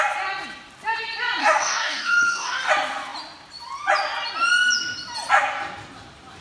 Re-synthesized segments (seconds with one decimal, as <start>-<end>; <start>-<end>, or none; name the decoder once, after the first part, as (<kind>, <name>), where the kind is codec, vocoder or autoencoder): 1.4-2.7 (codec, DAC)